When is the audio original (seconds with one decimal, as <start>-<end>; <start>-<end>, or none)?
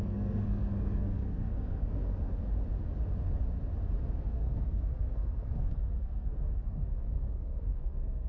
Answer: 2.5-4.2